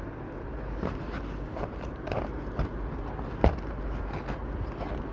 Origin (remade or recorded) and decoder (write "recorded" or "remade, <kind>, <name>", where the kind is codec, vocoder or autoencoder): recorded